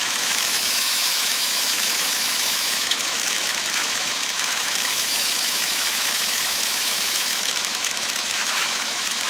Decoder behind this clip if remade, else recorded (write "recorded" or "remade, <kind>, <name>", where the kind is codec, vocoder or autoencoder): remade, autoencoder, DAC-VAE